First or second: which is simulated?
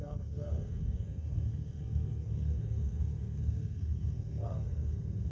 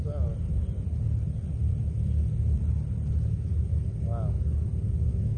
first